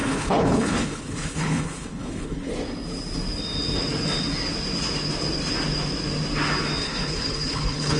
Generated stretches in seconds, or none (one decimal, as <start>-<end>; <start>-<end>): 0.0-2.5; 6.8-8.0